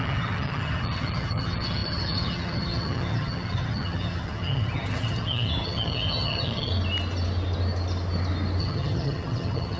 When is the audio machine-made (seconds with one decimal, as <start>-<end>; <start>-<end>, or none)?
0.0-6.7; 8.6-9.8